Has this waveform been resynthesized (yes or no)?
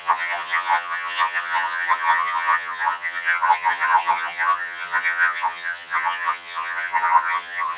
yes